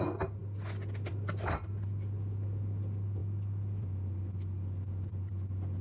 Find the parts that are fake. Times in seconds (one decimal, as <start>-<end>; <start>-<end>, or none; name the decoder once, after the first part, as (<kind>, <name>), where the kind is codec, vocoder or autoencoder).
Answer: none